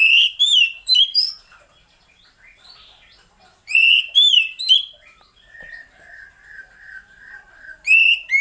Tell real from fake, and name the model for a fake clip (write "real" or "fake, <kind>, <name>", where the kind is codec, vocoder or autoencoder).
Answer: fake, vocoder, BigVGAN v2